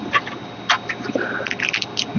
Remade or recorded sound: recorded